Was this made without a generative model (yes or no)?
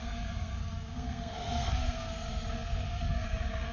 no